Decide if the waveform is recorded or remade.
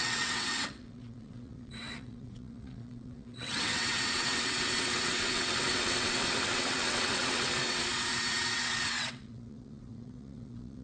remade